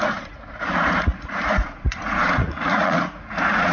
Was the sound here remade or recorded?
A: remade